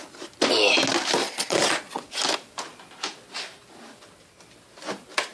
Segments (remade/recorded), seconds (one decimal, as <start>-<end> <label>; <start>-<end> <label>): 0.0-1.2 recorded; 1.2-2.1 remade; 2.1-5.3 recorded